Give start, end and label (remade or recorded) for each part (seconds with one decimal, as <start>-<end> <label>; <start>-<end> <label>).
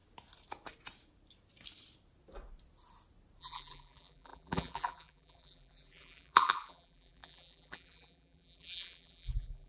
0.0-3.4 recorded; 3.4-9.7 remade